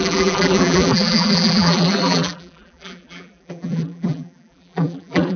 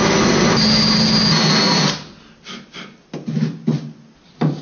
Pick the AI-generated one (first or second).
first